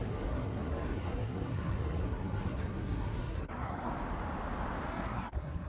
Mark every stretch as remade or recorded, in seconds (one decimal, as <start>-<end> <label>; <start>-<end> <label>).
0.0-3.9 remade; 3.9-4.9 recorded; 4.9-5.7 remade